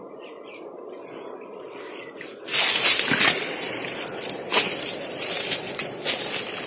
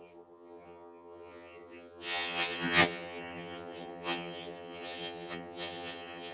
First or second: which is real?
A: first